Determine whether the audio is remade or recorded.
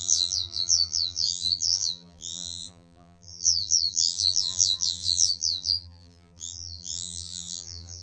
remade